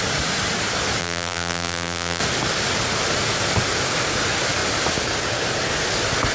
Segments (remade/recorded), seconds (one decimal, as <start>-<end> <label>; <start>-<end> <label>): 0.0-1.0 recorded; 1.0-2.2 remade; 2.2-6.3 recorded